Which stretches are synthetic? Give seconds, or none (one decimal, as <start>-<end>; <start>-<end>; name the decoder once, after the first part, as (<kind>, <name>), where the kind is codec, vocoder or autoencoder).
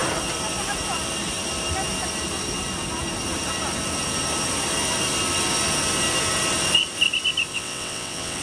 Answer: 7.5-8.4 (vocoder, WaveNeXt)